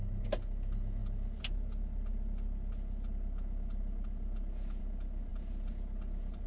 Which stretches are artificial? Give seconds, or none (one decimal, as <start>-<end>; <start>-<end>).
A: none